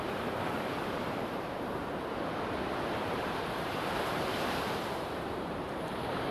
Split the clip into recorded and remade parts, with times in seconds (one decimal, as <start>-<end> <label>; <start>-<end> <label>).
0.0-1.8 remade; 1.8-2.9 recorded; 2.9-6.3 remade